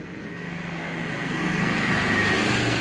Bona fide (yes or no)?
no